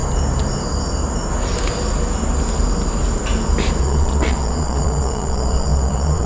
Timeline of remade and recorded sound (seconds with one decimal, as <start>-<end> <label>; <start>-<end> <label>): 0.0-3.8 recorded; 3.8-6.3 remade